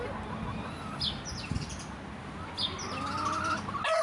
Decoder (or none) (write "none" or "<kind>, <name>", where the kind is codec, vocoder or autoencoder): none